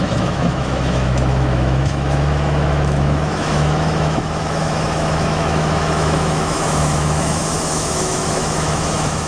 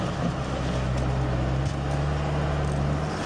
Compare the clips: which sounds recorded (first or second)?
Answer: second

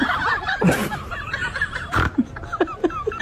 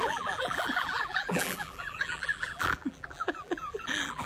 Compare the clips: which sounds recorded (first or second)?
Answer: first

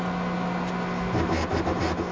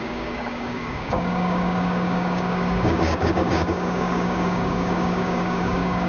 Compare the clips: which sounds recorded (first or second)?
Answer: first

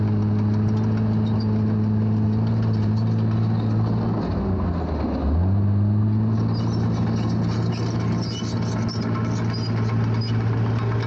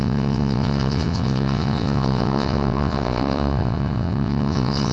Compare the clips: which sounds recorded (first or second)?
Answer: first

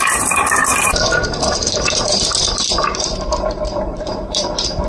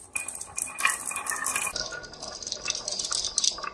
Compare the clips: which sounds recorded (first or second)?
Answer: second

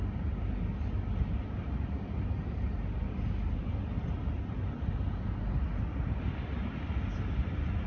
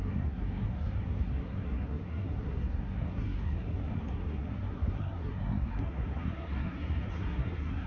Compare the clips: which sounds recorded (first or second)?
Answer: first